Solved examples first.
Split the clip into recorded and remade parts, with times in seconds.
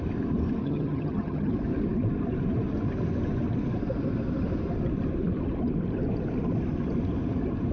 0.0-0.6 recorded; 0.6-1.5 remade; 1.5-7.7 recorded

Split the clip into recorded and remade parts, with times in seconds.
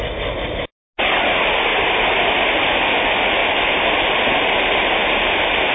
0.0-5.7 recorded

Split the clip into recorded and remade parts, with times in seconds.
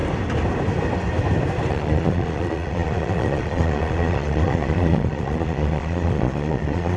0.0-1.7 recorded; 1.7-7.0 remade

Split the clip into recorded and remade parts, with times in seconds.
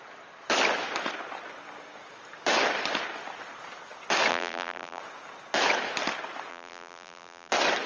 0.0-4.3 recorded; 4.3-5.0 remade; 5.0-6.5 recorded; 6.5-7.5 remade; 7.5-7.9 recorded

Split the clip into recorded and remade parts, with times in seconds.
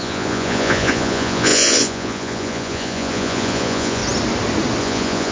0.0-4.0 remade; 4.0-4.8 recorded; 4.8-5.3 remade